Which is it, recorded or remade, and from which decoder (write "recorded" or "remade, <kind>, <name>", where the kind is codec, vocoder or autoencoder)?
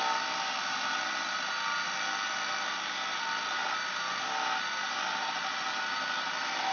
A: recorded